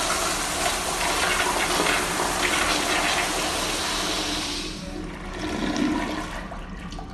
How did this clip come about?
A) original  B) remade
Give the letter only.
A